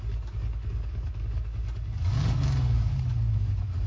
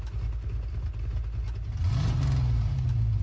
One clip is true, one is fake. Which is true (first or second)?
second